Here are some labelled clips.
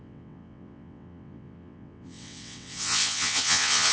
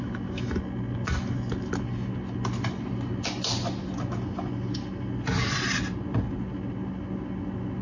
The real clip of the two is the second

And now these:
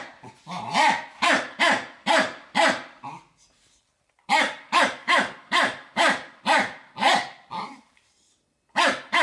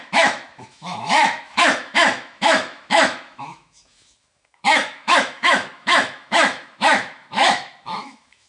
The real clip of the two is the first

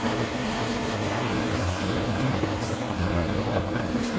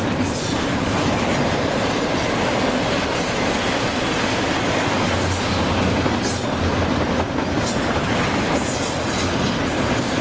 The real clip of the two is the second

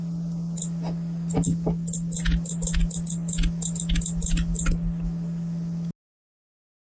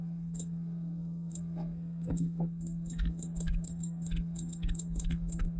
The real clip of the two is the first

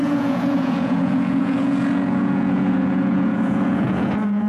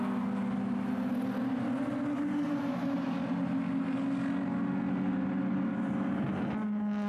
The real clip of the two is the second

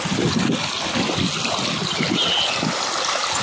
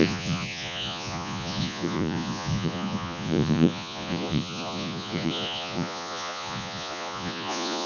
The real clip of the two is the first